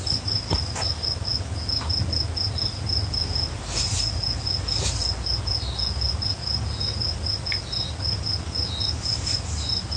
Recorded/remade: recorded